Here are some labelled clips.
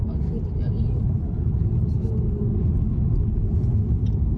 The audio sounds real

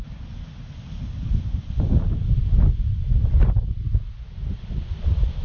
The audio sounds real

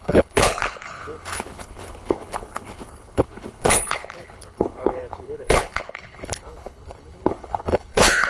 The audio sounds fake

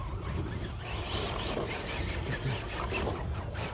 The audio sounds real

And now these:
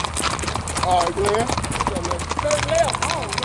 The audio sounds real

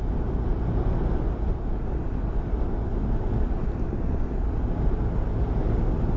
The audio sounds real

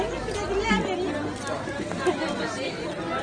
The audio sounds real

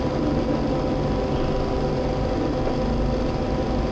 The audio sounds real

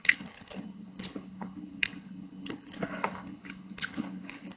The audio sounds fake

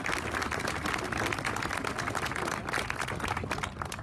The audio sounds real